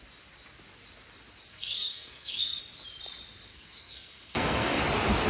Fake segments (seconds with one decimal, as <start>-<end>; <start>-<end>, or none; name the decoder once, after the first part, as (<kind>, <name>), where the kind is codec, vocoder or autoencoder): 1.5-2.6 (codec, SNAC); 3.5-4.8